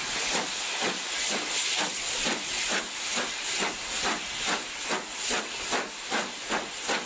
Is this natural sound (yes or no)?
yes